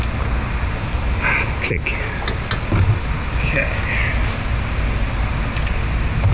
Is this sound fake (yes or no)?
no